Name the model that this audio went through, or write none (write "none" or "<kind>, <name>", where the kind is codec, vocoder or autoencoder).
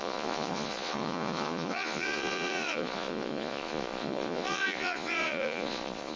vocoder, Vocos